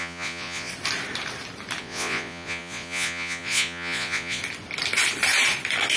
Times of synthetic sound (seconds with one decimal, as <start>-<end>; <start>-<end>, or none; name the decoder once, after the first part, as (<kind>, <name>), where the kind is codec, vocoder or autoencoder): 0.0-0.7 (vocoder, Vocos); 1.8-4.4